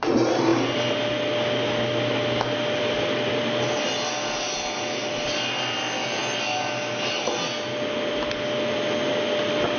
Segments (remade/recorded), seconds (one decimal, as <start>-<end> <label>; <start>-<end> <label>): 0.0-9.8 recorded